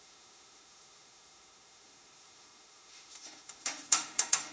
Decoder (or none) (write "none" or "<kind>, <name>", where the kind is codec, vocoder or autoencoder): autoencoder, DAC-VAE